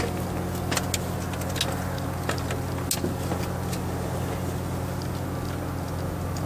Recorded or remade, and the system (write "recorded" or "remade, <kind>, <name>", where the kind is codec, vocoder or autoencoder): recorded